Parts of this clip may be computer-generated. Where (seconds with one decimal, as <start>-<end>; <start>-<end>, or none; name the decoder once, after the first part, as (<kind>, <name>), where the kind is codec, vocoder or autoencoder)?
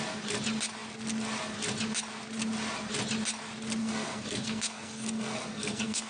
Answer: 3.8-6.1 (codec, SNAC)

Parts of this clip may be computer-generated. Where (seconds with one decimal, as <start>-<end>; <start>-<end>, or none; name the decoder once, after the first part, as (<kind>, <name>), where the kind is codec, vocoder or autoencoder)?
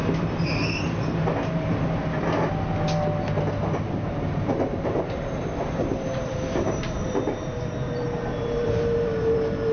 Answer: 3.5-9.7 (vocoder, BigVGAN v2)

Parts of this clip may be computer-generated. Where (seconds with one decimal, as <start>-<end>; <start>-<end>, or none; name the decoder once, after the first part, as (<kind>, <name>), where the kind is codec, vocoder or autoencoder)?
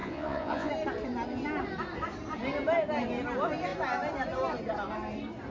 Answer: 0.0-0.7 (vocoder, Vocos)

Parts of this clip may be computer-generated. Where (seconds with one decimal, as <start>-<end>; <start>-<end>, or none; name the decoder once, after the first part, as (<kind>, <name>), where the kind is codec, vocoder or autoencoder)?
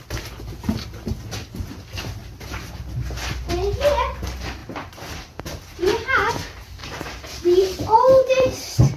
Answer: 2.2-3.4 (vocoder, BigVGAN v2); 4.6-6.3; 6.8-9.0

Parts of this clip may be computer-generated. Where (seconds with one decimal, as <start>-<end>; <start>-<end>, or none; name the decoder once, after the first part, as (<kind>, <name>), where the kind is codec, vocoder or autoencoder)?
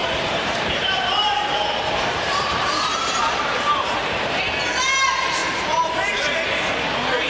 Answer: 0.0-4.4 (vocoder, BigVGAN v2); 5.4-6.1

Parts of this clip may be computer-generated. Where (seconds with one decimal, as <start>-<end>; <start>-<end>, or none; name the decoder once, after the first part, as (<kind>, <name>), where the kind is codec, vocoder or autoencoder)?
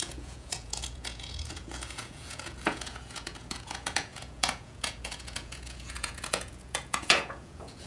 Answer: 0.0-7.9 (vocoder, Vocos)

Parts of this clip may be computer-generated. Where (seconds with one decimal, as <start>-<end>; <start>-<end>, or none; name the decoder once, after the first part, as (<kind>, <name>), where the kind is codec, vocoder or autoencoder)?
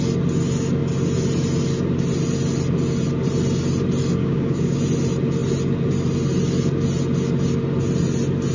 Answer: 4.2-4.8 (codec, DAC)